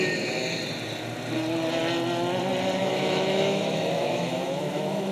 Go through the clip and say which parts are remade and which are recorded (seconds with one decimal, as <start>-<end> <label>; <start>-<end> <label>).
0.0-2.8 recorded; 2.8-5.1 remade